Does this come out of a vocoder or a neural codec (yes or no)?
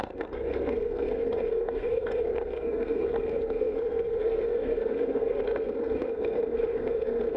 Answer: yes